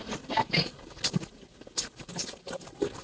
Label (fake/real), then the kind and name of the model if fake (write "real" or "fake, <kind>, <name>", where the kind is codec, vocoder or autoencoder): real